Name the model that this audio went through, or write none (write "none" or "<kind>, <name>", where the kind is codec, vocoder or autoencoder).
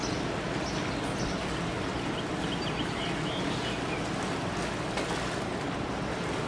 none